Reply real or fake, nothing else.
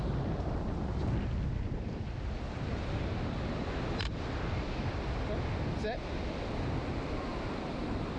real